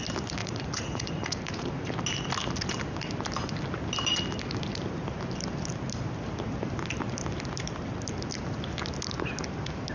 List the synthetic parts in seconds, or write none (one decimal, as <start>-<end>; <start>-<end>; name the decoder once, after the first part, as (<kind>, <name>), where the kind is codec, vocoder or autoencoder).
0.4-1.9 (vocoder, Vocos)